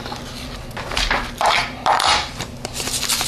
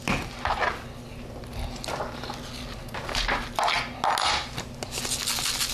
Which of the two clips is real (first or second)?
second